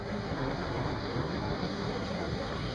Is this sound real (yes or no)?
no